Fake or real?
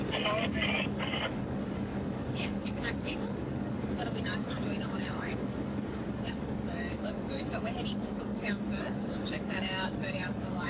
fake